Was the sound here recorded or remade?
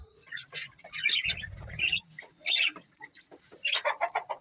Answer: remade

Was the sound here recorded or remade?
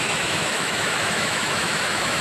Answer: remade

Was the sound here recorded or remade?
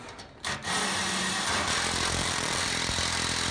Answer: recorded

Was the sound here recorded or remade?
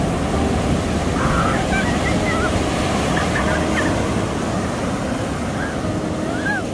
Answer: recorded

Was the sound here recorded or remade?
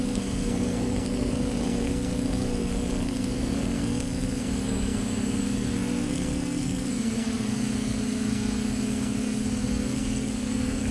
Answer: remade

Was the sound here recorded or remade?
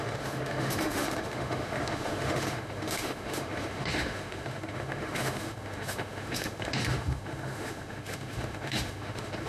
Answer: remade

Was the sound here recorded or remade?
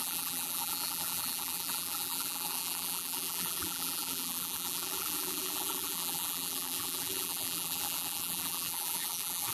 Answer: remade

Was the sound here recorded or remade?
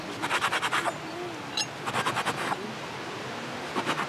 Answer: recorded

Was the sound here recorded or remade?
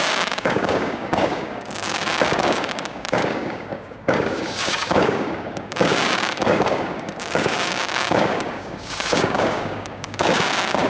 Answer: remade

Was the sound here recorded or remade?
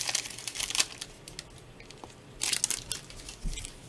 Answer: recorded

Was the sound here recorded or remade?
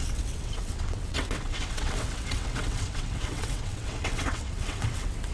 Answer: remade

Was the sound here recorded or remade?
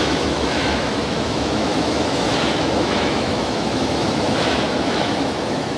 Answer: remade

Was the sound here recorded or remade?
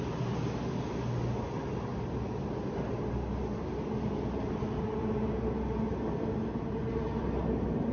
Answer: recorded